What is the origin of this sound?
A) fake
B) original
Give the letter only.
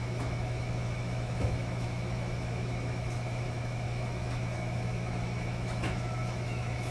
A